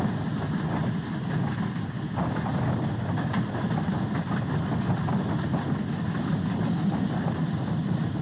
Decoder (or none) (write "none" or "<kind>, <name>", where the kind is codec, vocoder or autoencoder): none